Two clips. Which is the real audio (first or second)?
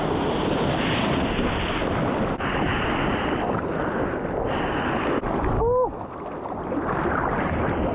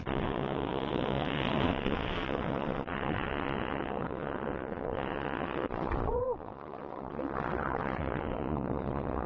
first